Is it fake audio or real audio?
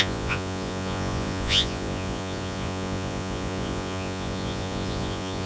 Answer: fake